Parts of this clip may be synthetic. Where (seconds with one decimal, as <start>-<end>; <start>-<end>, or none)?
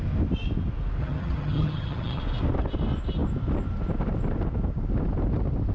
1.0-2.2